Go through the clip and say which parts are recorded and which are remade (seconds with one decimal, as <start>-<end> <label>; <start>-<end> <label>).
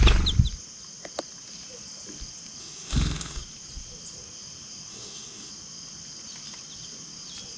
0.0-2.6 recorded; 2.6-3.4 remade; 3.4-4.9 recorded; 4.9-5.5 remade; 5.5-7.6 recorded